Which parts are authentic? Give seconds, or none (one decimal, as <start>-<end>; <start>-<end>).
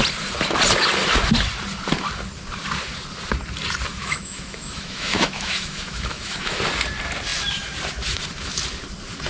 0.0-3.9; 6.6-9.3